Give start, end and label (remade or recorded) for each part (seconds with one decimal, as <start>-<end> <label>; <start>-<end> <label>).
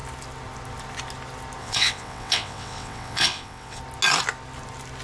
0.0-1.6 recorded; 1.6-3.8 remade; 3.8-5.0 recorded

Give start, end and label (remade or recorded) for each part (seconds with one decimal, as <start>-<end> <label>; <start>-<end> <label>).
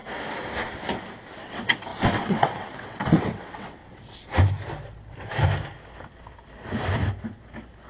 0.0-1.4 recorded; 1.4-3.8 remade; 3.8-7.9 recorded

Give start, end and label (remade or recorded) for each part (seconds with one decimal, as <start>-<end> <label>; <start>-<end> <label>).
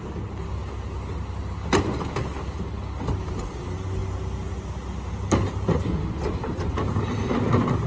0.0-7.9 recorded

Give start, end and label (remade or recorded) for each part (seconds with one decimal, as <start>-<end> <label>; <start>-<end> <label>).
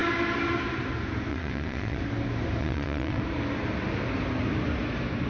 0.0-1.3 recorded; 1.3-2.0 remade; 2.0-2.6 recorded; 2.6-3.2 remade; 3.2-5.3 recorded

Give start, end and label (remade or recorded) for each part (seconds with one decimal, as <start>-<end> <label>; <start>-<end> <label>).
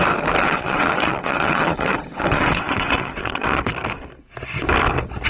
0.0-0.4 recorded; 0.4-3.6 remade; 3.6-5.3 recorded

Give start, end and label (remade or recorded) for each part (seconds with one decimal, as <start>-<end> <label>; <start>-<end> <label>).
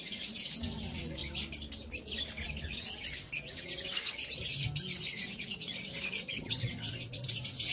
0.0-1.2 remade; 1.2-2.6 recorded; 2.6-4.2 remade; 4.2-5.0 recorded; 5.0-7.7 remade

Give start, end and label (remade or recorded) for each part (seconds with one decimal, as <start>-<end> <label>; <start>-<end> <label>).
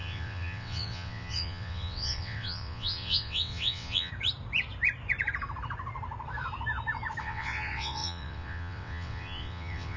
0.0-4.1 remade; 4.1-7.2 recorded; 7.2-10.0 remade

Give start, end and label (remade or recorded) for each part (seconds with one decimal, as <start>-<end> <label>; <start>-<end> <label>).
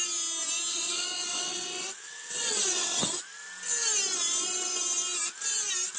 0.0-0.7 recorded; 0.7-3.0 remade; 3.0-6.0 recorded